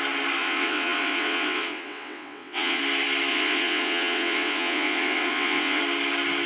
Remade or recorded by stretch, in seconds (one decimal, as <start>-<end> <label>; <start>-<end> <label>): 0.0-0.4 recorded; 0.4-2.8 remade; 2.8-3.3 recorded; 3.3-5.8 remade; 5.8-6.5 recorded